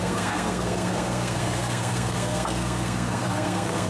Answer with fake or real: fake